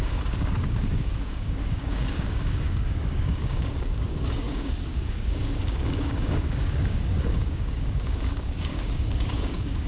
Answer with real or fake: fake